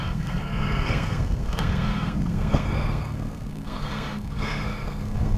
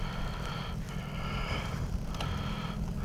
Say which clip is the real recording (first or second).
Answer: second